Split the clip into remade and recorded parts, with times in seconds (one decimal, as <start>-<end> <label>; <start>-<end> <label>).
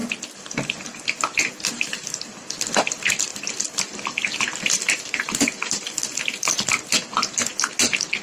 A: 0.0-8.2 recorded